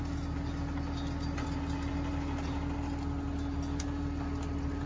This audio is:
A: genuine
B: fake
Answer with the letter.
A